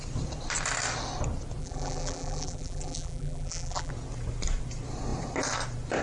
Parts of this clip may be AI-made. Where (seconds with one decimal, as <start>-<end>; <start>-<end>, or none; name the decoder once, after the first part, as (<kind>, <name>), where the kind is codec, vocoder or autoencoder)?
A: 1.6-3.9 (vocoder, BigVGAN v2)